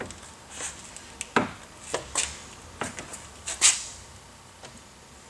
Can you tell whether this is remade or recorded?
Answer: recorded